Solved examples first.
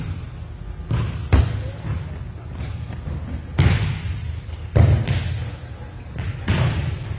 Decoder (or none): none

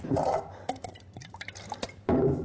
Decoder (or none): vocoder, BigVGAN v2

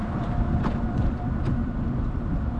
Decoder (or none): vocoder, BigVGAN v2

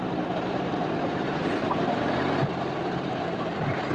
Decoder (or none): vocoder, BigVGAN v2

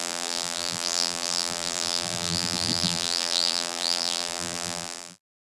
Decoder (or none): vocoder, BigVGAN v2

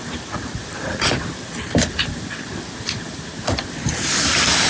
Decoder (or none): vocoder, BigVGAN v2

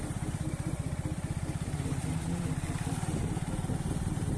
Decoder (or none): vocoder, BigVGAN v2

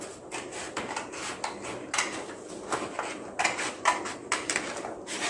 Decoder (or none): none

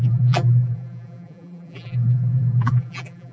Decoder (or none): vocoder, BigVGAN v2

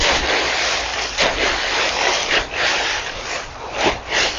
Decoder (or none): none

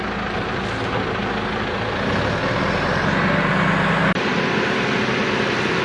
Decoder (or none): none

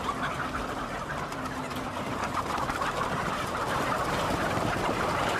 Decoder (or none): vocoder, BigVGAN v2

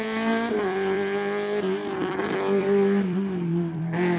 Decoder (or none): vocoder, BigVGAN v2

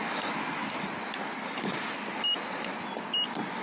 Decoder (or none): none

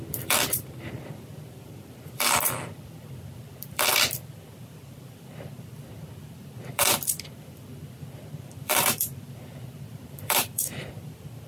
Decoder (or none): vocoder, BigVGAN v2